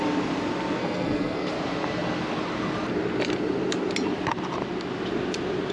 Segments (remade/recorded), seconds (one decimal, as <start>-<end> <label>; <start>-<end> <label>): 0.0-0.8 recorded; 0.8-1.5 remade; 1.5-5.7 recorded